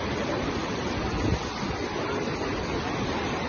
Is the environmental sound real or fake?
fake